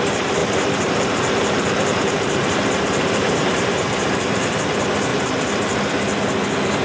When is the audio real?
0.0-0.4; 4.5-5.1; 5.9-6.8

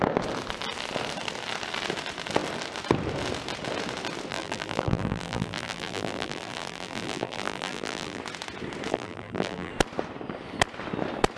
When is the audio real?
0.0-4.3; 8.2-8.9; 9.7-11.4

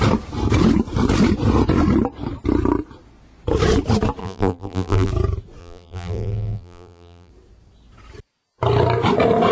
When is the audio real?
0.0-4.2; 5.1-5.6; 7.3-9.5